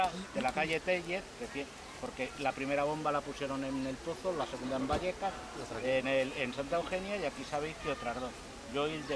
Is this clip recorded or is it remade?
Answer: recorded